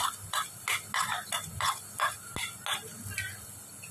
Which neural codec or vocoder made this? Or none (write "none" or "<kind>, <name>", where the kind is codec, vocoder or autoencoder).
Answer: none